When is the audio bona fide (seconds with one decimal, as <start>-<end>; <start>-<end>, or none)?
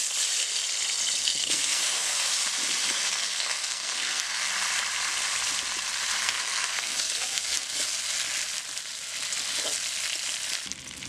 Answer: 0.0-1.2; 2.3-2.8; 4.5-6.2; 7.8-11.1